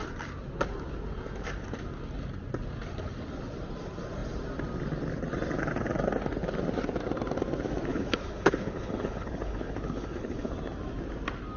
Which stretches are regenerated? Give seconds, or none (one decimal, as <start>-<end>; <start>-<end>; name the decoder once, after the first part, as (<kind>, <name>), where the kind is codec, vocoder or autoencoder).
7.9-10.5 (codec, HILCodec)